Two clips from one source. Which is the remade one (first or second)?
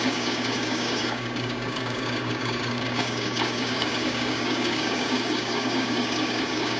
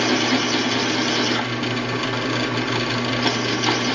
first